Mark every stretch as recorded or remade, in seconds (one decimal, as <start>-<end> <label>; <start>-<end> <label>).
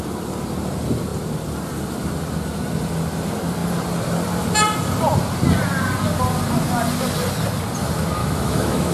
0.0-8.2 recorded; 8.2-8.9 remade